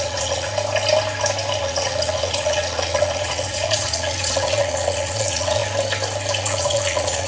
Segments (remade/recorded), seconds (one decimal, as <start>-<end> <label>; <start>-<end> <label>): 0.0-0.5 remade; 0.5-1.6 recorded; 1.6-5.6 remade; 5.6-6.4 recorded; 6.4-7.3 remade